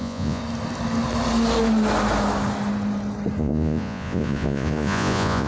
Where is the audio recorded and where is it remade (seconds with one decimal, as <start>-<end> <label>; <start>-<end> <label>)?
0.0-0.4 remade; 0.4-3.4 recorded; 3.4-5.5 remade